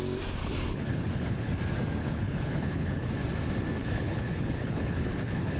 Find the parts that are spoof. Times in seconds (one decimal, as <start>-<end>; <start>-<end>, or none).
0.4-1.5; 2.0-3.1; 3.8-5.6